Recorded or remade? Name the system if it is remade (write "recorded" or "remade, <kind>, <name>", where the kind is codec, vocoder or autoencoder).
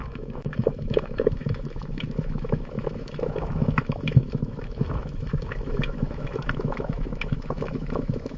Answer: remade, autoencoder, DAC-VAE